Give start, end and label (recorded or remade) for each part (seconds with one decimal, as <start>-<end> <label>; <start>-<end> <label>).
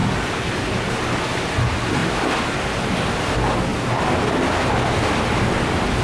0.0-0.9 remade; 0.9-2.0 recorded; 2.0-2.8 remade; 2.8-3.7 recorded; 3.7-5.5 remade; 5.5-6.0 recorded